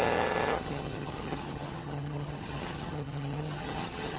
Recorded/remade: remade